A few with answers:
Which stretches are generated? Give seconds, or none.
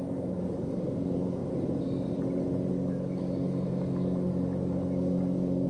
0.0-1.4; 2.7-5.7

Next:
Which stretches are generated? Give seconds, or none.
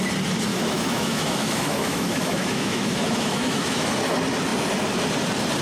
0.5-3.9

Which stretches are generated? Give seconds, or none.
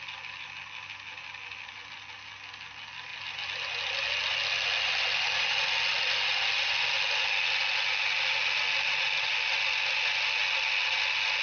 none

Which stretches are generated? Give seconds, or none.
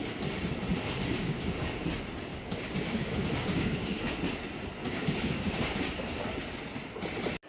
0.7-1.8; 2.3-4.2; 4.8-5.8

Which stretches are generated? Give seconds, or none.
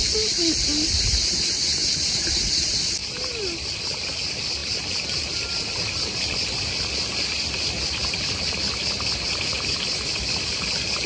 none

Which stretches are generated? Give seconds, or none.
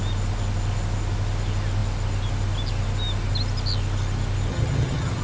4.5-5.2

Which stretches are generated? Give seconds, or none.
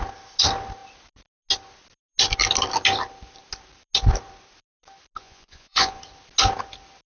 5.2-6.0